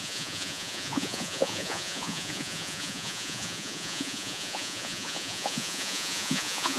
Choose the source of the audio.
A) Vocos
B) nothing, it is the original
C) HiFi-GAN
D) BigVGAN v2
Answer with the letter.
A